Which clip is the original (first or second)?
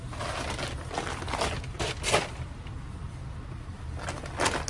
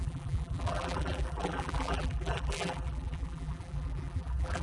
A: first